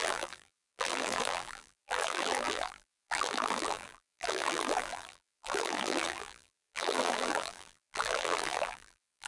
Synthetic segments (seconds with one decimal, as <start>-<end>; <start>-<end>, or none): 0.0-9.3